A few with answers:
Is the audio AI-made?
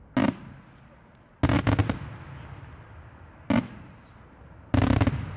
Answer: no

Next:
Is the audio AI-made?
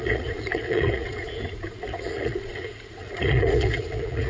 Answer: yes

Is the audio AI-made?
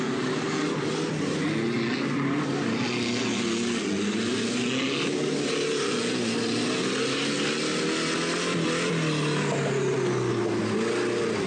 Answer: no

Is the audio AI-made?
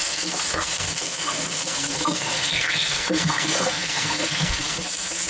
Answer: yes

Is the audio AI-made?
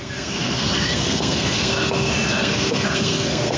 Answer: yes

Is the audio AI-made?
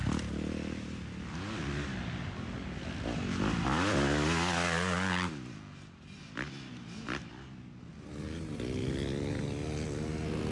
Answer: no